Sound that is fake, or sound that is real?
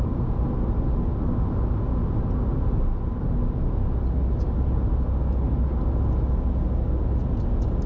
real